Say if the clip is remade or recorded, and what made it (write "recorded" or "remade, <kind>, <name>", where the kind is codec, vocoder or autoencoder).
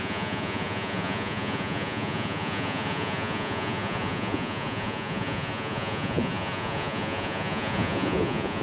remade, vocoder, Vocos